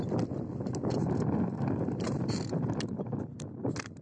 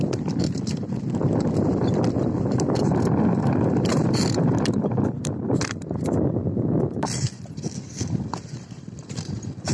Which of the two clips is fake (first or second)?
second